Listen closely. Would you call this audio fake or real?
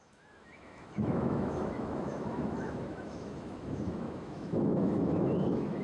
fake